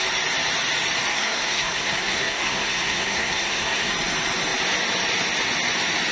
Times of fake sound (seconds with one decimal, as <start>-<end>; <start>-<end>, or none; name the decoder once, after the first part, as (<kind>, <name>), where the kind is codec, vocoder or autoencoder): 1.1-3.9 (codec, SNAC)

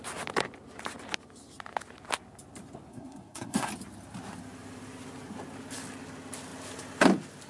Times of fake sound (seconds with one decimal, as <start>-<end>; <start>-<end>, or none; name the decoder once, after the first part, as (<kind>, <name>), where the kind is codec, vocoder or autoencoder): 2.9-3.7 (codec, SNAC)

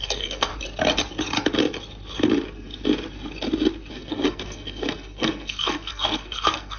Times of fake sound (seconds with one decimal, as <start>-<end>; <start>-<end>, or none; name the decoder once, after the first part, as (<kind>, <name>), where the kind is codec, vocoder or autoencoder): 0.0-0.5 (codec, SNAC); 3.9-6.8